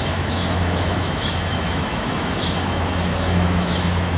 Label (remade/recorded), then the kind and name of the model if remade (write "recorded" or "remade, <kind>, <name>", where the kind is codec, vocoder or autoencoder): remade, autoencoder, DAC-VAE